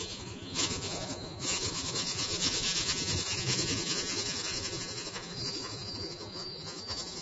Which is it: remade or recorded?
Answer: remade